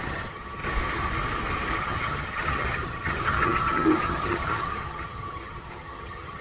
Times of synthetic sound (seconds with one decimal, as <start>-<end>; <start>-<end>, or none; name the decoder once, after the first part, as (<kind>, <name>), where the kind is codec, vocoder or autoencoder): 0.0-0.6 (vocoder, HiFi-GAN); 1.8-6.4

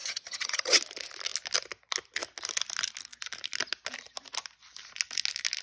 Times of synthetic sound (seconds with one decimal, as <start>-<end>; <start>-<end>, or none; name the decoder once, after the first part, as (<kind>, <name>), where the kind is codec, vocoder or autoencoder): 0.0-0.8 (vocoder, HiFi-GAN)

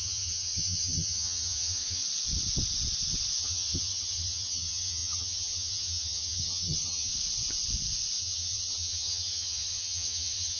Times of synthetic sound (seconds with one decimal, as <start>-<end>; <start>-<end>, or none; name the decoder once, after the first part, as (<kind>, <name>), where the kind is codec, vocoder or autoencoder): 0.0-2.0 (vocoder, HiFi-GAN); 3.4-7.1; 8.2-10.6

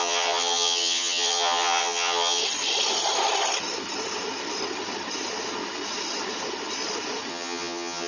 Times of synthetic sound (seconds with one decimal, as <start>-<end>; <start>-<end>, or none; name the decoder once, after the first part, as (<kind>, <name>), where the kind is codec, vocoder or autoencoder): 0.0-2.4 (vocoder, HiFi-GAN); 7.3-8.1

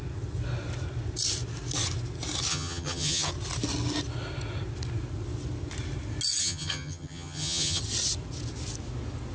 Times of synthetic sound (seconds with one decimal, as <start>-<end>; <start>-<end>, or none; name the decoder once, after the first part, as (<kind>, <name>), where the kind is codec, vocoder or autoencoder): 2.5-3.3 (vocoder, HiFi-GAN); 6.4-7.8

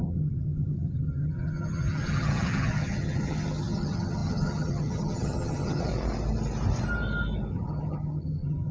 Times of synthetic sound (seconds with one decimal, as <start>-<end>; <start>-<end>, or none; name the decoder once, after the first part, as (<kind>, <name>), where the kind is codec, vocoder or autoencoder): 0.0-5.9 (vocoder, HiFi-GAN); 7.5-8.7